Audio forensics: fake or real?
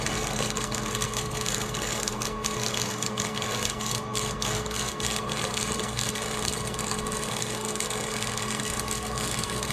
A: fake